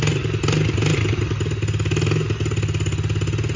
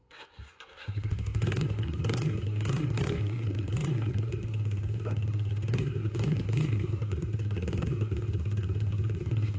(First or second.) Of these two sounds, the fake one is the second